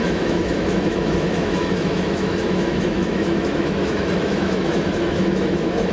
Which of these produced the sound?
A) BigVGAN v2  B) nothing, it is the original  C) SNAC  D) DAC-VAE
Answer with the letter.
D